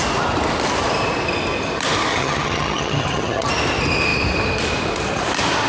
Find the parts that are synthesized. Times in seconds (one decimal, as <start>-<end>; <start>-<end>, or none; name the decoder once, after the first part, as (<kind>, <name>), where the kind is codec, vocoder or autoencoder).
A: 2.1-3.5 (vocoder, HiFi-GAN)